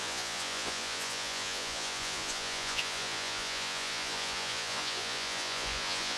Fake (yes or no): yes